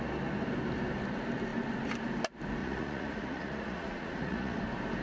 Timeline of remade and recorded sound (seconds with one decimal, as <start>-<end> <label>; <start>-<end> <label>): 0.0-2.6 recorded; 2.6-4.6 remade; 4.6-5.0 recorded